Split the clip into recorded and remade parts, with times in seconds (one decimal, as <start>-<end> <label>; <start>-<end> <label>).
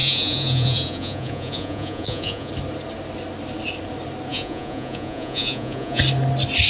0.0-2.5 remade; 2.5-4.3 recorded; 4.3-6.0 remade; 6.0-6.7 recorded